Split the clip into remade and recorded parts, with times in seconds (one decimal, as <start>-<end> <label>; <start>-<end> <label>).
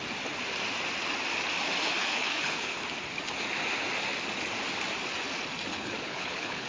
0.0-2.0 recorded; 2.0-2.8 remade; 2.8-5.7 recorded; 5.7-6.7 remade